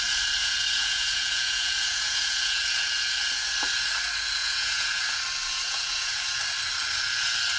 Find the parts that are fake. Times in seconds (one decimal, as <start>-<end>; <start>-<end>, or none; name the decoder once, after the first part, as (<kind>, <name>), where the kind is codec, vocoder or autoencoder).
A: 0.4-2.6 (vocoder, Vocos); 4.4-5.0; 5.4-6.1